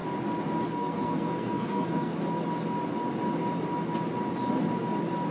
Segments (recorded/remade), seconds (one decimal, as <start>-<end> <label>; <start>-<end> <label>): 0.0-0.7 recorded; 0.7-2.1 remade; 2.1-5.3 recorded